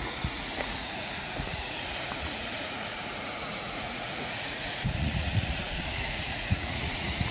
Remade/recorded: remade